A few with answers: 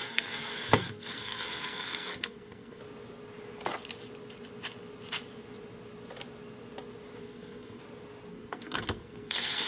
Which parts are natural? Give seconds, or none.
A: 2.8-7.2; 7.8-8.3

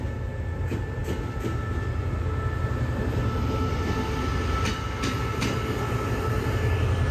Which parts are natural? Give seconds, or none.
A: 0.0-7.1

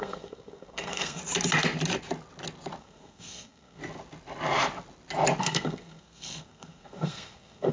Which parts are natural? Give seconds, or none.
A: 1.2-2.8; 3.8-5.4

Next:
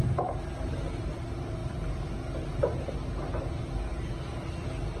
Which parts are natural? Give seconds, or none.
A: 0.0-5.0